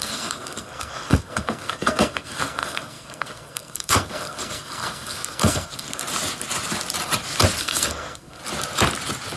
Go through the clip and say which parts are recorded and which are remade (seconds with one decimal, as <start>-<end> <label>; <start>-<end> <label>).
0.0-6.0 remade; 6.0-7.6 recorded; 7.6-8.4 remade; 8.4-9.4 recorded